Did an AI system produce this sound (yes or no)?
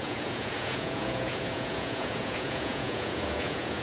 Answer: yes